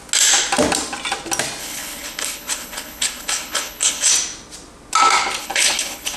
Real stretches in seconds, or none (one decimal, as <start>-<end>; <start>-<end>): 0.0-1.6; 4.1-5.4

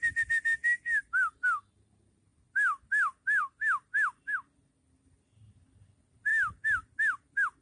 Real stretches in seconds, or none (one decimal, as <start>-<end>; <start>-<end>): 0.0-7.6

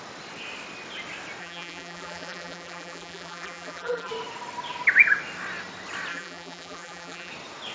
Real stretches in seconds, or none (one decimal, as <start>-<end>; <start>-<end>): 0.0-1.4; 4.1-6.1; 7.3-7.7

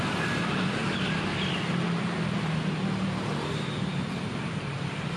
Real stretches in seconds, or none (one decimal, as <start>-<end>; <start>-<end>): 0.8-3.5; 3.9-4.5

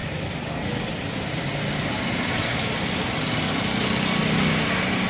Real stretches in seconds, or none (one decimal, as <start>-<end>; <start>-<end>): 0.0-5.1

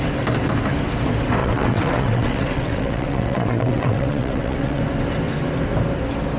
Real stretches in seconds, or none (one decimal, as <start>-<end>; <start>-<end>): 0.0-1.4; 4.8-6.4